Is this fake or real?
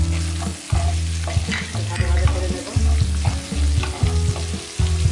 real